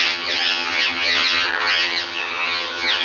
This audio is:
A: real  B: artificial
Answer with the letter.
B